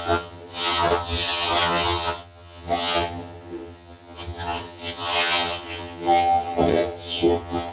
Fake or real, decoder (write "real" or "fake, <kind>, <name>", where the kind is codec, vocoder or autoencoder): fake, vocoder, HiFi-GAN